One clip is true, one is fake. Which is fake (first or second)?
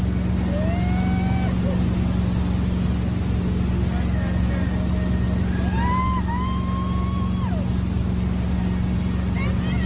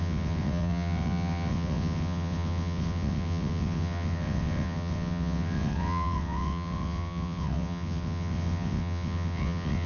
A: second